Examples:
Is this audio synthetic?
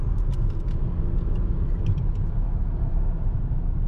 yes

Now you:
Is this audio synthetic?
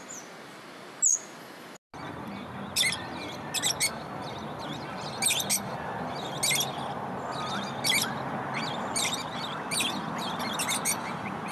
no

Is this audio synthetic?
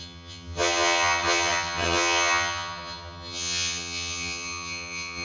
yes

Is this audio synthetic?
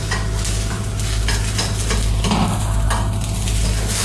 no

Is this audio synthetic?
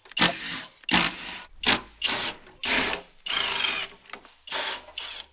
no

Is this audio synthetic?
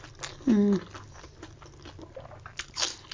no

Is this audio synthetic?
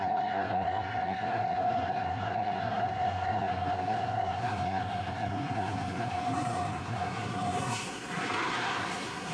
yes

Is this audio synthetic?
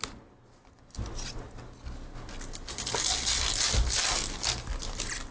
no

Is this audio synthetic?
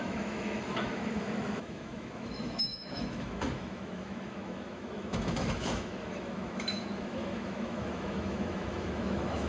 yes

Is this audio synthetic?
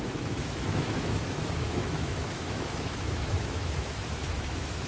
yes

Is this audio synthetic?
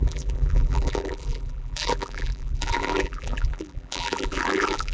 yes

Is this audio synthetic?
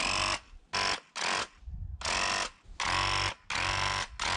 no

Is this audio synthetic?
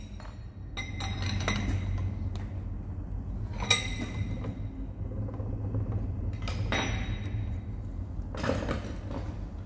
no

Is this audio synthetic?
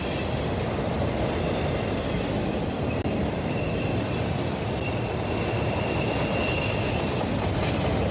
no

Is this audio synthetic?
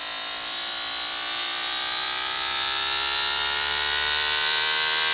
yes